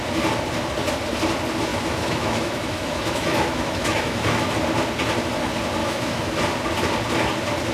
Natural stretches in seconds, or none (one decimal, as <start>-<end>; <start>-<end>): 0.0-1.7; 4.4-5.8; 6.4-7.7